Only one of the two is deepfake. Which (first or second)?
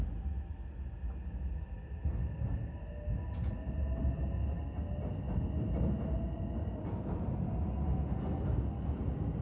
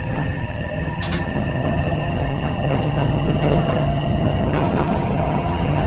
second